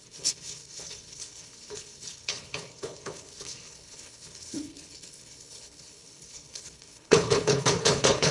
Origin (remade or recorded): remade